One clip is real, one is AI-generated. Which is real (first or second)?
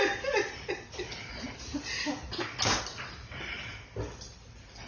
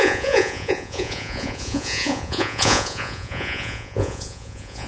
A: first